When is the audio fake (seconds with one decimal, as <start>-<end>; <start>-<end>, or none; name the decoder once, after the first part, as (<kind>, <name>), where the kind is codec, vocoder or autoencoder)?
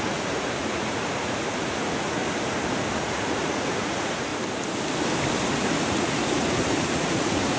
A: 0.0-2.2 (vocoder, Vocos); 3.0-4.3; 5.5-7.6